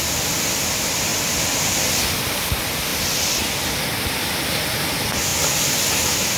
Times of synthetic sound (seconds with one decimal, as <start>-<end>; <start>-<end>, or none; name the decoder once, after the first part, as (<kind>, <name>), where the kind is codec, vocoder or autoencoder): none